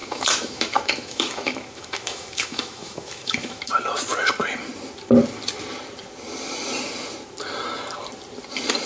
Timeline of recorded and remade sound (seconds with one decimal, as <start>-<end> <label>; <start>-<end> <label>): 0.0-3.7 remade; 3.7-8.9 recorded